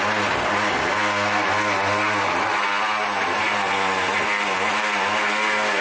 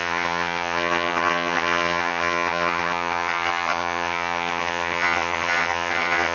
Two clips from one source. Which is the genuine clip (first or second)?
first